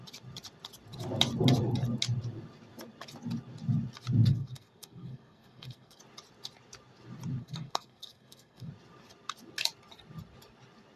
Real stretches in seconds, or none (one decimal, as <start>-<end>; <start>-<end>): 0.0-4.3; 6.0-7.4; 8.7-11.0